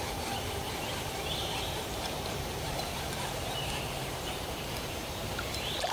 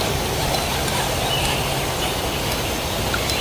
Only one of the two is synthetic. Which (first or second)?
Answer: first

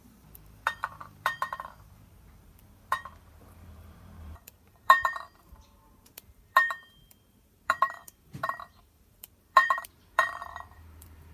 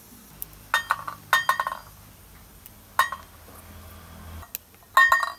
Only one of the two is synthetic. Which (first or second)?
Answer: first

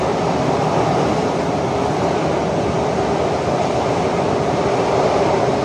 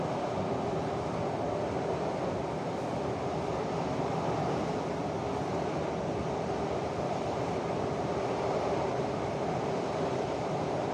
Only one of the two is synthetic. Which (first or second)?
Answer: second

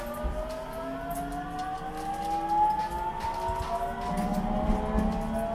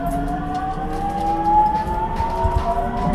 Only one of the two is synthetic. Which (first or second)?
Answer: second